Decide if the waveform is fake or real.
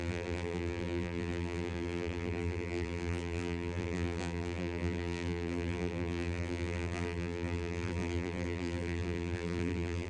fake